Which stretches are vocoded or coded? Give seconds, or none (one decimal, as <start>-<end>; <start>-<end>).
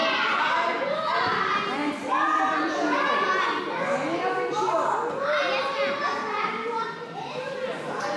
none